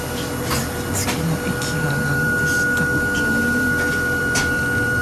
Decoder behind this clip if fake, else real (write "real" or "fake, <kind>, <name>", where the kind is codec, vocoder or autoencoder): real